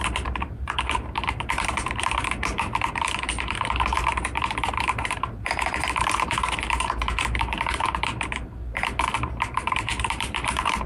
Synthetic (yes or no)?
yes